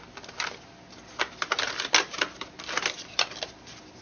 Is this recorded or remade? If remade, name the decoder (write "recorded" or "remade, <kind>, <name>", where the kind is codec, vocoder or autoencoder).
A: recorded